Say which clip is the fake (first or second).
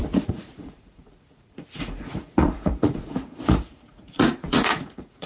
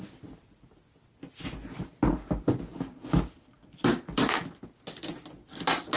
first